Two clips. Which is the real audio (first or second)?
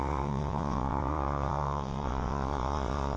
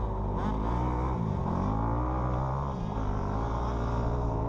second